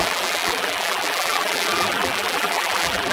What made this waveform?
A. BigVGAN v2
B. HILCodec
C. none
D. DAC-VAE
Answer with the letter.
A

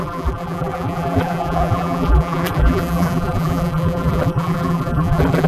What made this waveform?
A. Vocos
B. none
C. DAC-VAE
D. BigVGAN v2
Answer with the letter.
D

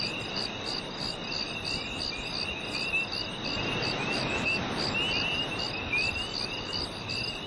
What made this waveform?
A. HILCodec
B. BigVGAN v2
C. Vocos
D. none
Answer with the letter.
D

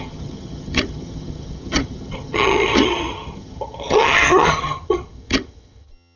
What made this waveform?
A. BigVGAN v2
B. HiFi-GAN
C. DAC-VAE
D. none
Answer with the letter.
B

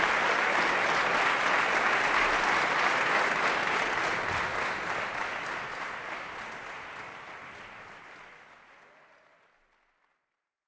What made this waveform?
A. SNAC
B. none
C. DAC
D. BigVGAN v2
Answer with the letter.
B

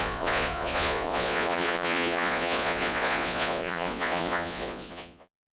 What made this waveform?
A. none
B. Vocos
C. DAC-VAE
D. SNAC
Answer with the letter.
B